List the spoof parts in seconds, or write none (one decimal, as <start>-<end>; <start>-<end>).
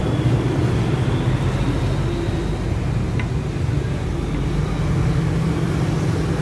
none